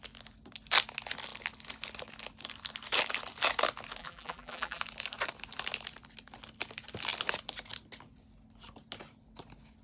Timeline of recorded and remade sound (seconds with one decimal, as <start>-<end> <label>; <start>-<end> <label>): 0.0-4.0 recorded; 4.0-4.8 remade; 4.8-9.8 recorded